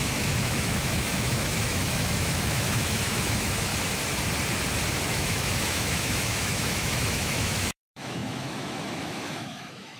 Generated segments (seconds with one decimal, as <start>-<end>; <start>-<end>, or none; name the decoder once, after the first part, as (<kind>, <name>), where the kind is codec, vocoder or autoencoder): 0.0-3.7 (autoencoder, DAC-VAE); 5.1-10.0